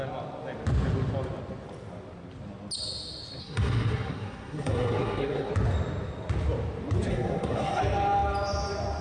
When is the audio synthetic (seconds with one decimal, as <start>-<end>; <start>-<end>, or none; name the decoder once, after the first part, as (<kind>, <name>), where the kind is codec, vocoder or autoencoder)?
3.4-5.5 (codec, SNAC); 7.1-7.8